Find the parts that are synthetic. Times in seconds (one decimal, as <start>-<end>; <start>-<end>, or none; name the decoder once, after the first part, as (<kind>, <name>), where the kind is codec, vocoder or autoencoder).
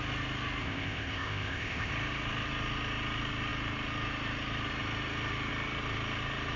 0.6-1.9 (codec, ZipCodec)